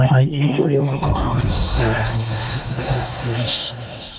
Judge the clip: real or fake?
fake